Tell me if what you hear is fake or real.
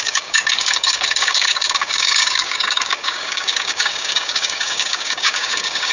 fake